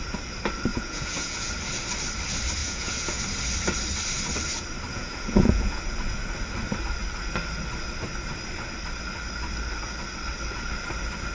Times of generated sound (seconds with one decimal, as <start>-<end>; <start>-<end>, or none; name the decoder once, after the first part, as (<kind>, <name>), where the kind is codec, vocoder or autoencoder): 0.7-1.5 (vocoder, Vocos); 2.6-3.2; 4.9-5.8